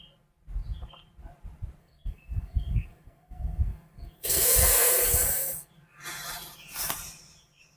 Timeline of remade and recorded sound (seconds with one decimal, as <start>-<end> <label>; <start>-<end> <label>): 0.0-1.8 recorded; 1.8-5.7 remade; 5.7-7.8 recorded